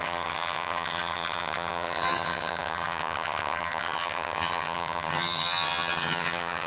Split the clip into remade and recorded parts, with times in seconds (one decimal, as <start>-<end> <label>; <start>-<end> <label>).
0.0-6.7 remade